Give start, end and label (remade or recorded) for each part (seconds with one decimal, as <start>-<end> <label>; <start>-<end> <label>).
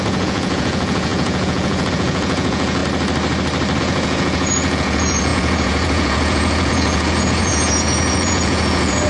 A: 0.0-2.8 remade; 2.8-3.8 recorded; 3.8-9.1 remade